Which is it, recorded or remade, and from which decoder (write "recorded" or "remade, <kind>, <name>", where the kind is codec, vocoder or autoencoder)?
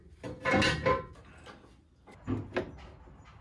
recorded